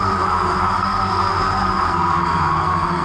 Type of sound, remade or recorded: remade